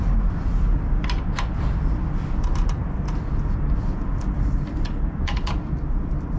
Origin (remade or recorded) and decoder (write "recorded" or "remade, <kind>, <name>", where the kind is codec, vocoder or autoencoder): remade, vocoder, BigVGAN v2